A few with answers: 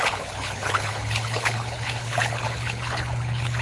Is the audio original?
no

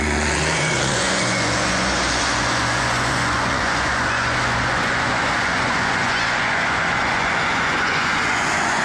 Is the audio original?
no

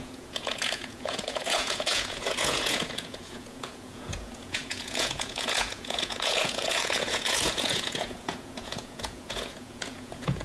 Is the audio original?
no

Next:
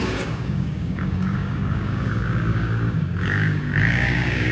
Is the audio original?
no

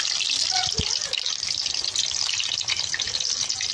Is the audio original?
yes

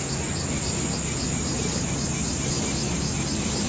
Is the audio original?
yes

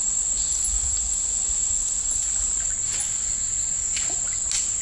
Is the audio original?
yes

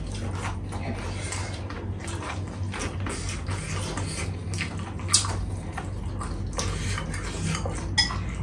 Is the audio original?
yes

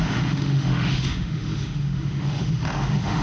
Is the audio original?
no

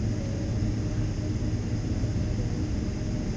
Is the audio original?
yes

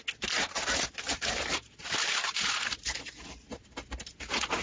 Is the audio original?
yes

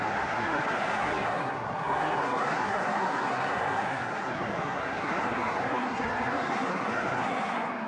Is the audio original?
no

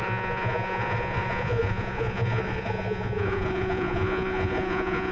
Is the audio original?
no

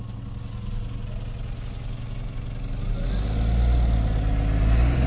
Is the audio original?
yes